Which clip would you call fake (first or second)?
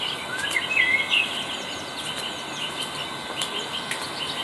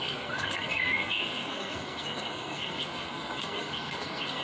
second